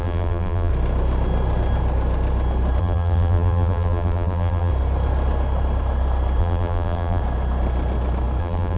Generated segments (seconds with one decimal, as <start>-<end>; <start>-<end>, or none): 0.0-0.7; 2.8-4.7; 6.4-7.2; 8.4-8.8